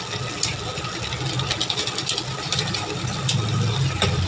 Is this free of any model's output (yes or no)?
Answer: yes